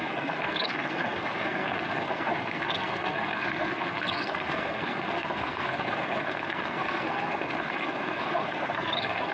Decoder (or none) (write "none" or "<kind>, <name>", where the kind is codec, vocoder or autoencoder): codec, SNAC